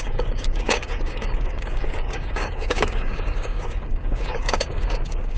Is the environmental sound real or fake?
fake